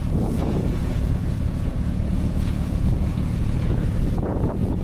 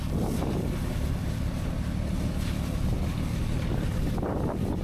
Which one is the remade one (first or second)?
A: first